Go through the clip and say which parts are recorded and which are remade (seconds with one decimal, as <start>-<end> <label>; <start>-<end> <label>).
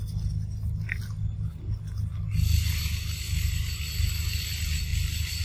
0.0-5.4 recorded